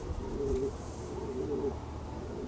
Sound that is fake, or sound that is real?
fake